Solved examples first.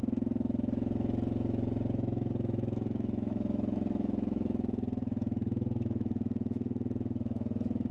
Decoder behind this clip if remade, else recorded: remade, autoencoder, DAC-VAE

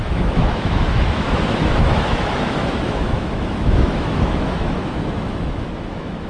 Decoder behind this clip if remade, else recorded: remade, autoencoder, DAC-VAE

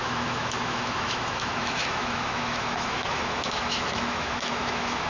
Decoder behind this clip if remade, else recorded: remade, autoencoder, DAC-VAE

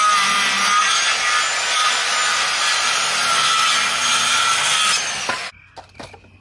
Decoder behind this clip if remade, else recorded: recorded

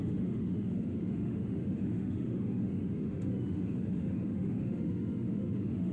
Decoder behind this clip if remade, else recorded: remade, autoencoder, DAC-VAE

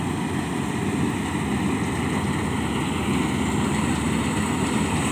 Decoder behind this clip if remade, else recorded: recorded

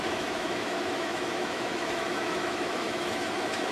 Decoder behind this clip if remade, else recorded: remade, autoencoder, DAC-VAE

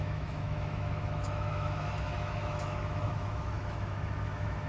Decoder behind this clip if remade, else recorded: remade, autoencoder, DAC-VAE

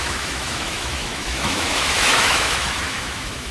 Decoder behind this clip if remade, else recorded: remade, autoencoder, DAC-VAE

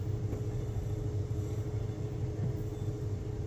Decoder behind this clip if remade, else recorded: recorded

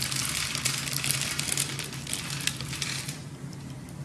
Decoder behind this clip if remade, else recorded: recorded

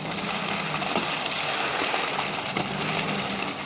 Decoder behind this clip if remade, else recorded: recorded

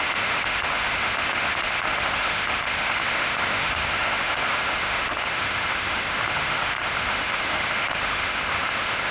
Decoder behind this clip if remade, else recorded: remade, autoencoder, DAC-VAE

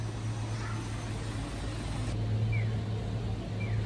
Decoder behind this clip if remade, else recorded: recorded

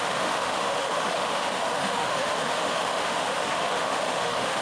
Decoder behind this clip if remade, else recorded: remade, autoencoder, DAC-VAE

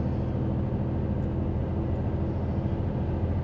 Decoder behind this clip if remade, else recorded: recorded